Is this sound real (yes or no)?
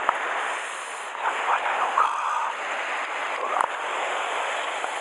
yes